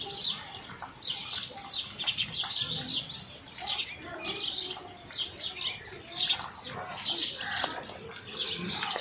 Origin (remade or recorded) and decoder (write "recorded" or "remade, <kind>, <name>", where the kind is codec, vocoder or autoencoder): recorded